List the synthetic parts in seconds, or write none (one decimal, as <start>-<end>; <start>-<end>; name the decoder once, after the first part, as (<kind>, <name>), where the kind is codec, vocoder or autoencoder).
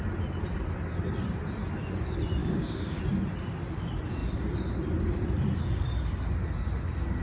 2.4-3.0 (codec, DAC)